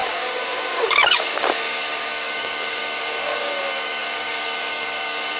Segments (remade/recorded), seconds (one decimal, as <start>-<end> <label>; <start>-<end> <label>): 0.0-5.4 remade